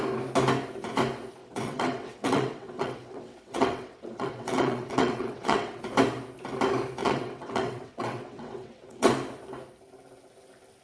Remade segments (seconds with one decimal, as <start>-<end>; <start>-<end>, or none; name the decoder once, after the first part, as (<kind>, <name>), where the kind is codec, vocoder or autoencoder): 1.4-5.8 (vocoder, WaveNeXt); 7.0-9.1